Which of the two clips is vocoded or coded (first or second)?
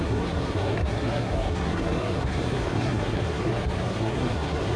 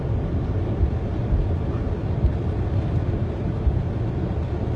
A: first